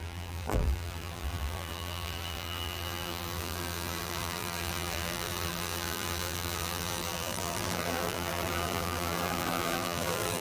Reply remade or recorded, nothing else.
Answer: remade